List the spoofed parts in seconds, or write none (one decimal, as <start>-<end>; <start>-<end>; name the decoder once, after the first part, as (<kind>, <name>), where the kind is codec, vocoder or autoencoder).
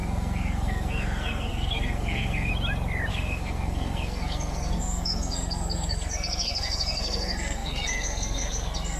0.0-2.5 (codec, SNAC); 3.1-9.0